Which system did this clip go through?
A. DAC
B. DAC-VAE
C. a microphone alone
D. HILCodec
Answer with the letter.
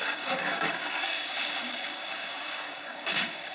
A